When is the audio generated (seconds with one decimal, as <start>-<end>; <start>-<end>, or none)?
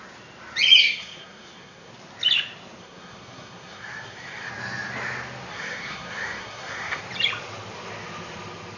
0.8-1.9; 2.8-4.5; 5.5-7.0